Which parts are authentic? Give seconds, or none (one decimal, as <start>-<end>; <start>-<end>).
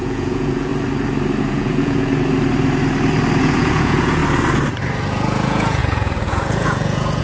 0.7-1.4; 2.1-3.4; 4.2-5.1